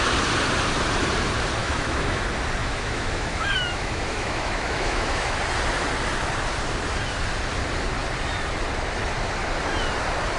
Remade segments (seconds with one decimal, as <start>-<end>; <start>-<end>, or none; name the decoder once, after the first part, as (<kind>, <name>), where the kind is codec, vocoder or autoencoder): 1.6-2.2 (autoencoder, DAC-VAE); 2.6-5.4